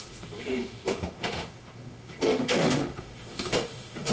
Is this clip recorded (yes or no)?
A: no